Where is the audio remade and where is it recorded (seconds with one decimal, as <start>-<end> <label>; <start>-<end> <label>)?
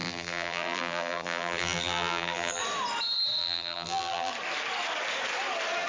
0.0-2.6 remade; 2.6-3.4 recorded; 3.4-4.3 remade; 4.3-5.9 recorded